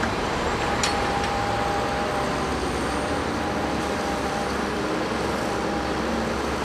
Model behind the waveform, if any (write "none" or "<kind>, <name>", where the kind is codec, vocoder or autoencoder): none